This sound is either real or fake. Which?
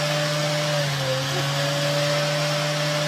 real